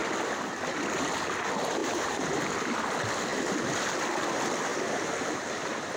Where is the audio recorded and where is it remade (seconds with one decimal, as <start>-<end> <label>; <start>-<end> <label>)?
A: 0.0-1.8 recorded; 1.8-2.3 remade; 2.3-4.7 recorded; 4.7-5.6 remade; 5.6-6.0 recorded